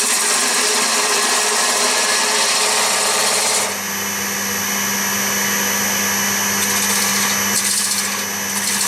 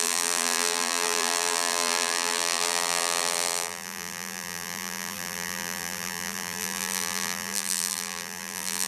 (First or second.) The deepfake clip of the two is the second